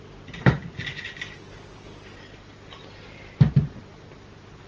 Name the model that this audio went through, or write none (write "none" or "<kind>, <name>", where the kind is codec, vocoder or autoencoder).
none